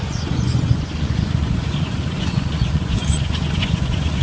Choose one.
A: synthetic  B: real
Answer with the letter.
A